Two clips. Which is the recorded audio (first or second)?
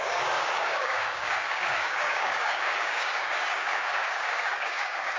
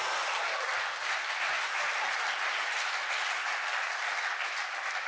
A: second